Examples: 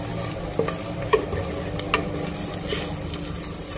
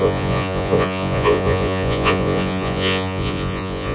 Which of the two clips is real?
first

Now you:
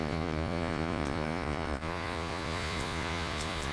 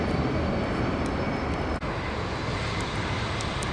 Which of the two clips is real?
second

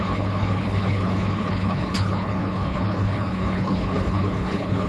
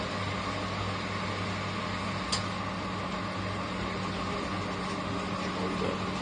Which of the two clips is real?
second